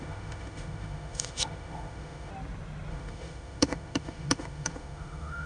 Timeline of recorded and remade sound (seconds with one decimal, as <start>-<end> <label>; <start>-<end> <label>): 0.0-2.3 remade; 2.3-2.9 recorded; 2.9-5.5 remade